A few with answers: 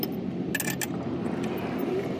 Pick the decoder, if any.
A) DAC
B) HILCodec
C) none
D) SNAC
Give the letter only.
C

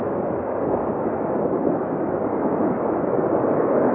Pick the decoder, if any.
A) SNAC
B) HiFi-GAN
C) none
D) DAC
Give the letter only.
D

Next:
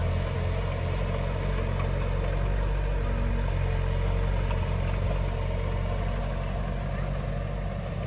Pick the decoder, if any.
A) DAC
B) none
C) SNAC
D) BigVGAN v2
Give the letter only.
B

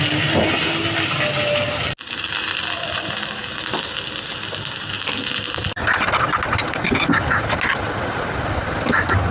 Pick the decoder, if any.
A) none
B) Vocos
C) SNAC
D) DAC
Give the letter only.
A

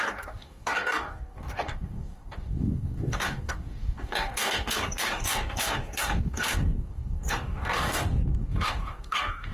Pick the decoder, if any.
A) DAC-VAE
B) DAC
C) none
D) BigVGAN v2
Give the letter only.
B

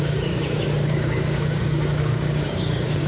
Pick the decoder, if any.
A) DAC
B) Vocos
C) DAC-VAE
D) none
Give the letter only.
A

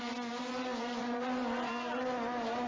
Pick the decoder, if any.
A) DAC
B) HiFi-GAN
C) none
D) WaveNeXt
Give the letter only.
C